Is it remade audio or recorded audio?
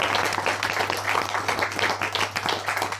recorded